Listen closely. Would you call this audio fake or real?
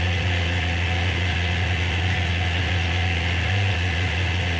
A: fake